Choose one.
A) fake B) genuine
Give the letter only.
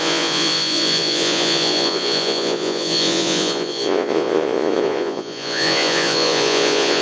A